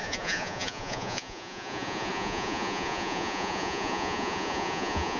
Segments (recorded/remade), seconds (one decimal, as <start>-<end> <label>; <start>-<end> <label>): 0.0-5.2 remade